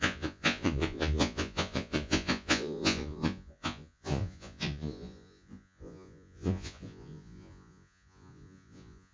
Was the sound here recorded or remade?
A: remade